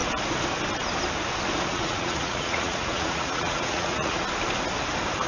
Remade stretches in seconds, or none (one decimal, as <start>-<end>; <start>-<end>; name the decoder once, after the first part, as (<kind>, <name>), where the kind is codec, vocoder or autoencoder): 1.7-4.2 (vocoder, Vocos)